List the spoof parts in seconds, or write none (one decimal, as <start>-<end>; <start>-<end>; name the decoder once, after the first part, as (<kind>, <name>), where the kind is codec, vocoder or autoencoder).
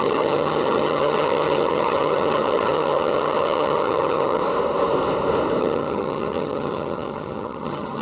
0.0-4.4 (vocoder, HiFi-GAN); 5.6-8.0